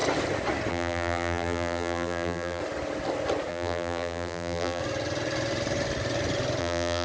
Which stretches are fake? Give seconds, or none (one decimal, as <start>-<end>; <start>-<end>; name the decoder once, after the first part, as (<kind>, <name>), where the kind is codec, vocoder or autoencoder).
0.7-2.6 (vocoder, BigVGAN v2); 3.5-4.8; 6.6-7.0